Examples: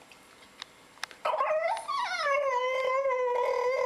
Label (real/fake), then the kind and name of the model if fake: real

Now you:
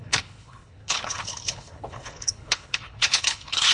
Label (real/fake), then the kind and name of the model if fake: fake, codec, HILCodec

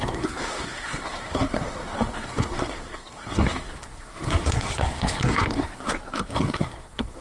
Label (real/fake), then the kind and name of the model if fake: fake, codec, SNAC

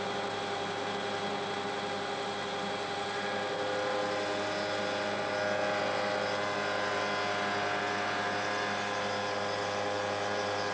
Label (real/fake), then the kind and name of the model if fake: real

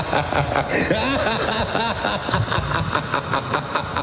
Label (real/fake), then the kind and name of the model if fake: real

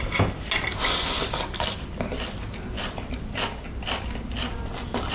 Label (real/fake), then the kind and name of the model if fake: real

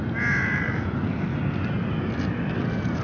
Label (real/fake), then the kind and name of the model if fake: real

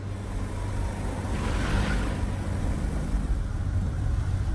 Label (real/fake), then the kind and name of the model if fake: real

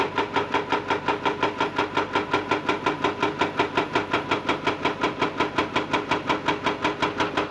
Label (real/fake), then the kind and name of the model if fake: real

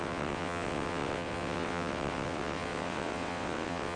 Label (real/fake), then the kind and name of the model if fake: fake, vocoder, WaveNeXt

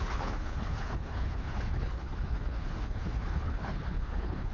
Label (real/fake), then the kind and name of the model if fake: fake, codec, HILCodec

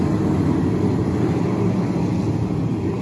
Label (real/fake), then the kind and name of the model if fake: real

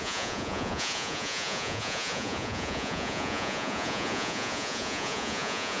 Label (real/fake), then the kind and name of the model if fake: fake, vocoder, Vocos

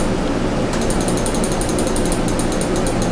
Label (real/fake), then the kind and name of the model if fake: real